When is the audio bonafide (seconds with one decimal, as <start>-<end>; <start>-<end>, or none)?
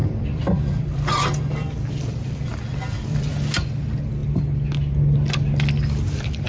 3.3-6.5